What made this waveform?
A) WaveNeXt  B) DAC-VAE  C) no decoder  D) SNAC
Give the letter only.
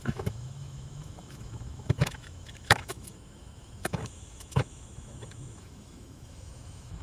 B